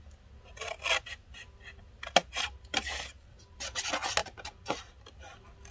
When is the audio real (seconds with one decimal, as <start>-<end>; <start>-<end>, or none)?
0.0-2.2; 3.8-4.2; 5.1-5.7